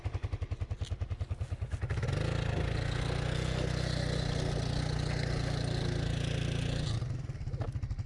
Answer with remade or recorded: recorded